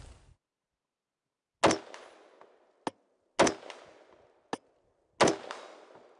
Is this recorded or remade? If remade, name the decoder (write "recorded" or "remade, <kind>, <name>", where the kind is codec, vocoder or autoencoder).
recorded